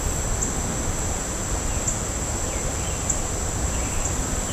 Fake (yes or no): no